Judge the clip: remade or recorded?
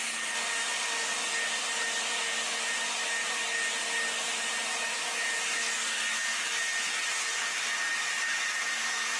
recorded